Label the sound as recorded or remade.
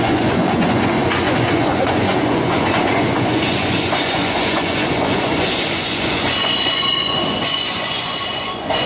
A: remade